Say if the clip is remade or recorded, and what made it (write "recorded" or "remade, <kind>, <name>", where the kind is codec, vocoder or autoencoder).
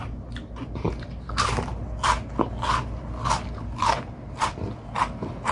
recorded